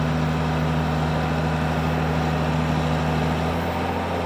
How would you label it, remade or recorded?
recorded